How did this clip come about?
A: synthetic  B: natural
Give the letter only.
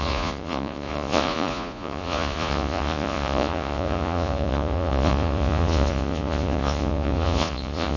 A